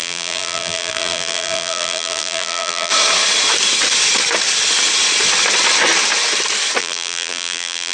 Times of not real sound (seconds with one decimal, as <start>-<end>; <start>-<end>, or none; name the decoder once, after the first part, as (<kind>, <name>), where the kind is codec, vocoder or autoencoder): 0.0-2.9 (vocoder, BigVGAN v2); 6.8-7.9